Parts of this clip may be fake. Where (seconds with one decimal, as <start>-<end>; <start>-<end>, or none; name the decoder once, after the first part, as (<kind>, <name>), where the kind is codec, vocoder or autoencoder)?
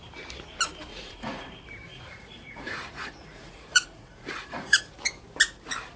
0.9-1.5 (vocoder, Vocos); 1.9-4.9